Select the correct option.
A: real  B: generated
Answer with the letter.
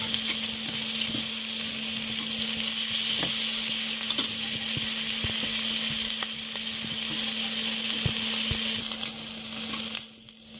A